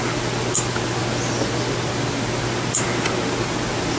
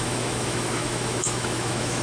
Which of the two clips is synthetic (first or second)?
second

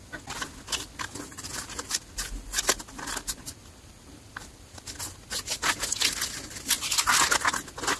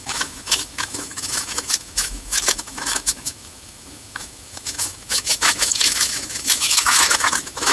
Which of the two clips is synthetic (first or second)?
second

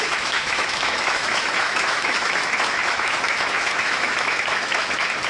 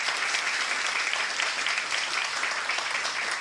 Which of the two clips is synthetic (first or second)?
first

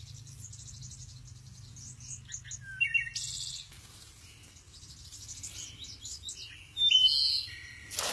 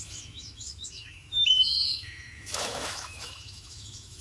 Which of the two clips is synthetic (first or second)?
second